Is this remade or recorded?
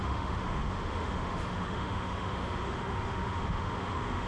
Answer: remade